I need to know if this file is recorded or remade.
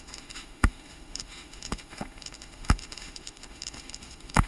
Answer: remade